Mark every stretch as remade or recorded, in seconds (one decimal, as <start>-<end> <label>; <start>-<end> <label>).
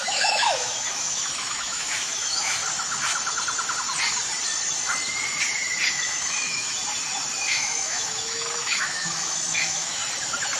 0.0-2.6 remade; 2.6-5.9 recorded; 5.9-6.8 remade; 6.8-7.5 recorded; 7.5-10.0 remade; 10.0-10.6 recorded